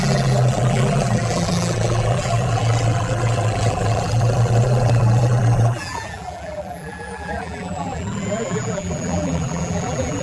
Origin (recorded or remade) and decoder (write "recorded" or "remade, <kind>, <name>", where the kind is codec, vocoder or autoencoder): remade, vocoder, BigVGAN v2